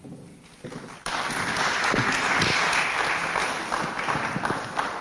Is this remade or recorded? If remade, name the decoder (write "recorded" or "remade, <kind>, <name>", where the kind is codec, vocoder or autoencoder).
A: recorded